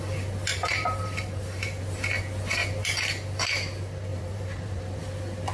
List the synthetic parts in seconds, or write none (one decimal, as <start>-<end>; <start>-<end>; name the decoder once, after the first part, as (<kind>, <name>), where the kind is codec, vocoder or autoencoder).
0.5-1.8 (vocoder, BigVGAN v2); 4.1-5.0